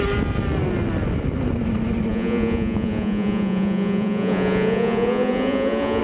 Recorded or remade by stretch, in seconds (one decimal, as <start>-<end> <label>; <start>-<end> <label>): 0.0-2.1 recorded; 2.1-6.0 remade